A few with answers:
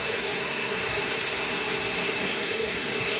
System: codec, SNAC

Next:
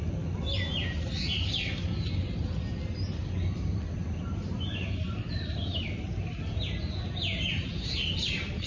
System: none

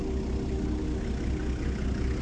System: none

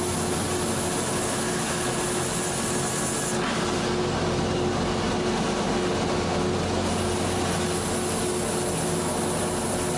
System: none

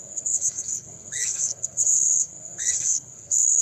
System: codec, SNAC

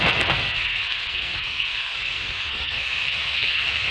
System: codec, SNAC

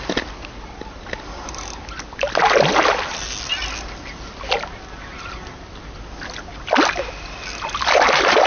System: none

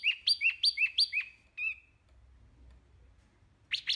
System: none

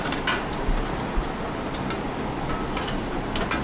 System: none